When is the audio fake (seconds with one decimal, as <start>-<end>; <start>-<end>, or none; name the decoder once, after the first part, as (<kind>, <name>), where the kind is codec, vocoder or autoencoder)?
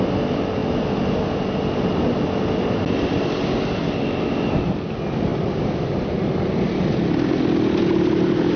none